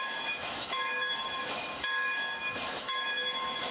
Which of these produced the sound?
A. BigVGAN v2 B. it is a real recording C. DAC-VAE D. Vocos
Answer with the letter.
C